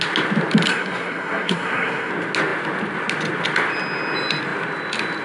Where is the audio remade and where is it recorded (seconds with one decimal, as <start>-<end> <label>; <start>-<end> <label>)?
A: 0.0-0.7 recorded; 0.7-2.1 remade; 2.1-5.2 recorded